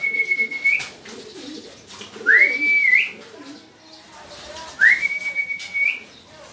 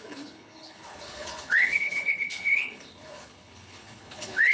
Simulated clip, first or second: second